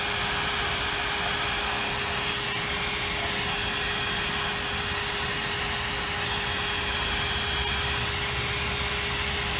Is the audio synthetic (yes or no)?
no